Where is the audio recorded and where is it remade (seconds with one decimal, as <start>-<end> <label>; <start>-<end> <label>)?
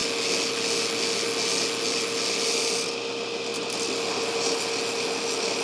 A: 0.0-5.6 recorded